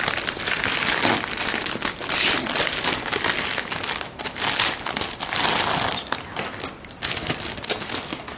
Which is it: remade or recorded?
recorded